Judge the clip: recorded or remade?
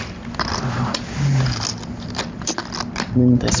recorded